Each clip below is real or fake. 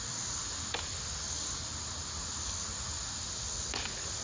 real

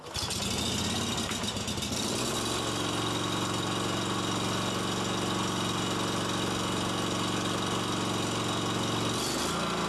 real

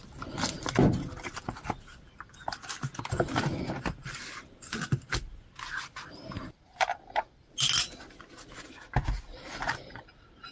real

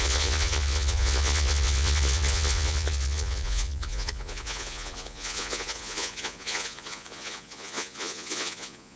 fake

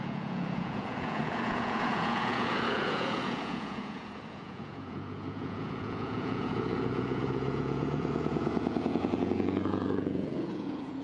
fake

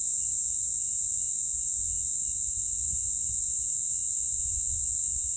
fake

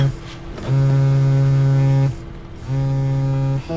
real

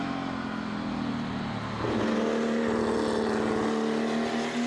real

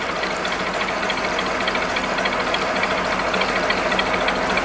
real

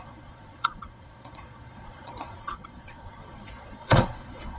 fake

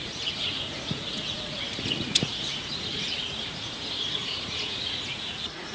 fake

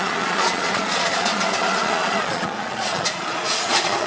fake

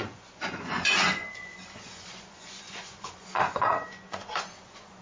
fake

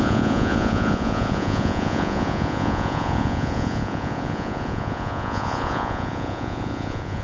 fake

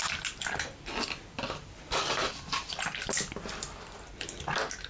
real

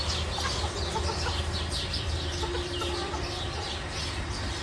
real